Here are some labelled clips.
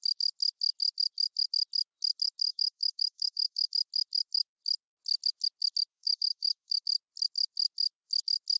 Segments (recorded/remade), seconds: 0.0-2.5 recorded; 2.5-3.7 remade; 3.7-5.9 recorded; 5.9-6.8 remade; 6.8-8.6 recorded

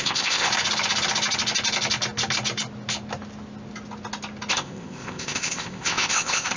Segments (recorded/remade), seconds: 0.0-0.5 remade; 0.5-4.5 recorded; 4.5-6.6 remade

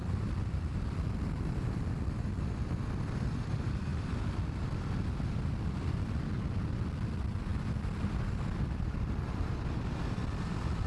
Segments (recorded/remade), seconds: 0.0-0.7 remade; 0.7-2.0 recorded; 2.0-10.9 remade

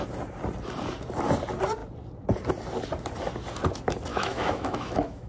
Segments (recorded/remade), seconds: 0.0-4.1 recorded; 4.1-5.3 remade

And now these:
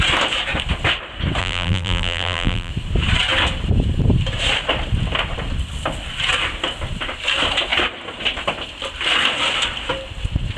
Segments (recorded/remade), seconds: 0.0-1.4 recorded; 1.4-2.7 remade; 2.7-10.6 recorded

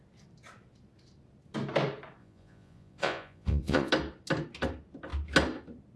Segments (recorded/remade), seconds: 0.0-2.2 recorded; 2.2-3.9 remade; 3.9-6.0 recorded